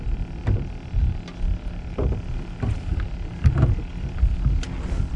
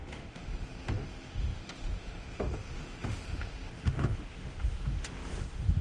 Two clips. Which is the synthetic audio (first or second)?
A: second